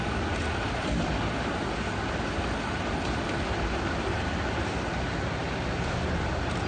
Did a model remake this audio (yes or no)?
no